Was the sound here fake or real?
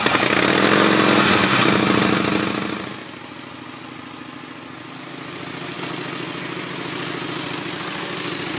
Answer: real